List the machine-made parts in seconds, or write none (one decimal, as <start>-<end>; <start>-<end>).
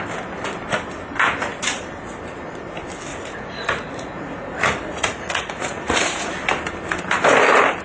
3.1-6.3